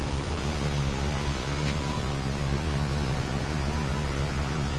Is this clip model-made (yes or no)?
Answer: yes